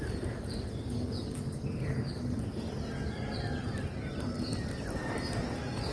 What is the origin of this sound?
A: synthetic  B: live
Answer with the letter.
B